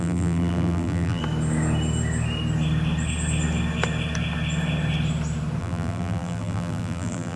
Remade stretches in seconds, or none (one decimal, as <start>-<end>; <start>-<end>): 0.0-1.2; 5.6-7.4